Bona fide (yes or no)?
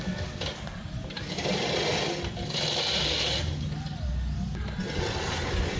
yes